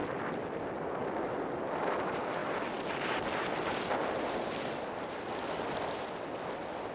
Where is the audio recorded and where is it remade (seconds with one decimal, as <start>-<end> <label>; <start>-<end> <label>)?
0.0-1.0 remade; 1.0-1.8 recorded; 1.8-2.4 remade; 2.4-4.6 recorded; 4.6-6.9 remade

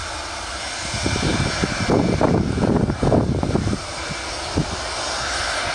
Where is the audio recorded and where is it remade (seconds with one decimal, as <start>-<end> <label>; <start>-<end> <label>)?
0.0-5.7 recorded

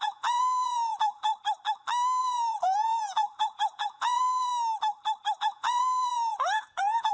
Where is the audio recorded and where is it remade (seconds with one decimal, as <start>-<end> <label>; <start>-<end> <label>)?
0.0-1.3 remade; 1.3-2.2 recorded; 2.2-4.5 remade; 4.5-5.4 recorded; 5.4-7.1 remade

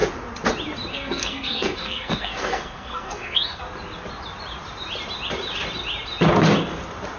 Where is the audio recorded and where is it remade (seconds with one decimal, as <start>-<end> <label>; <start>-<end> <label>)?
0.0-0.9 recorded; 0.9-3.6 remade; 3.6-7.2 recorded

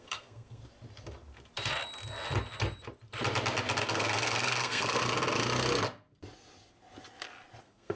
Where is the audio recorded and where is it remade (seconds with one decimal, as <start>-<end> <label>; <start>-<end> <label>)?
0.0-0.6 remade; 0.6-3.8 recorded; 3.8-5.0 remade; 5.0-7.6 recorded; 7.6-8.0 remade

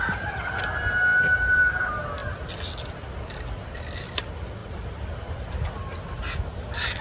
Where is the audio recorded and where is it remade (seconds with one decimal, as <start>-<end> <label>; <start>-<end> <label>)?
0.0-7.0 recorded

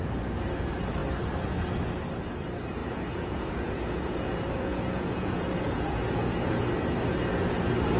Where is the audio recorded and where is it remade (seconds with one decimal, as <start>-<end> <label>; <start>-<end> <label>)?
0.0-2.8 recorded; 2.8-6.6 remade; 6.6-8.0 recorded

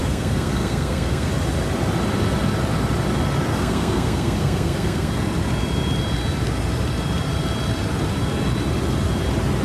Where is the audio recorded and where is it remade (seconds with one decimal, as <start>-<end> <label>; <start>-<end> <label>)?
0.0-1.3 remade; 1.3-3.5 recorded; 3.5-5.1 remade; 5.1-9.6 recorded